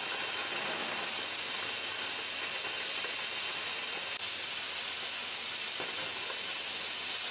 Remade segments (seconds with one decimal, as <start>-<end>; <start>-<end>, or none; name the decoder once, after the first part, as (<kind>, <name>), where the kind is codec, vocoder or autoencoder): none